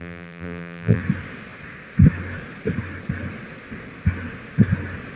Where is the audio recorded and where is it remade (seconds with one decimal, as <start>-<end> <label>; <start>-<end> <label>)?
0.0-1.0 remade; 1.0-5.2 recorded